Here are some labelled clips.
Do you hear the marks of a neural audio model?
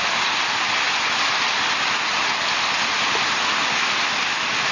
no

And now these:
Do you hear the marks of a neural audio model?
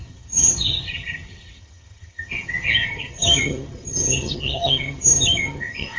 yes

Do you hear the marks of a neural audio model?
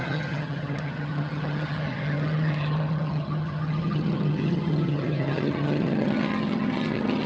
yes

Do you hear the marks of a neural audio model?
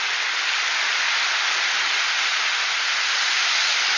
no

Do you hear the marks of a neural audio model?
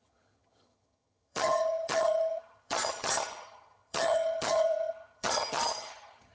yes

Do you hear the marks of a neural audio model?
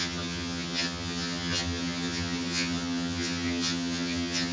yes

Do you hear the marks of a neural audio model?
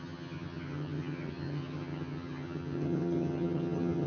yes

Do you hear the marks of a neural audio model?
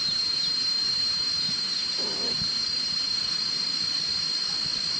no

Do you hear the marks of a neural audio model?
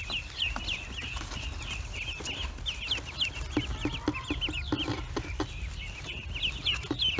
no